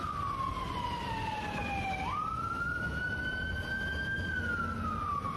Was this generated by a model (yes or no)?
no